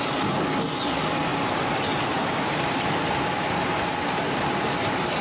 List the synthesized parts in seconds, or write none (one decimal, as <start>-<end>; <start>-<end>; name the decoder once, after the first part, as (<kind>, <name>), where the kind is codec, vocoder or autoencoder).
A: 1.3-4.4 (vocoder, BigVGAN v2)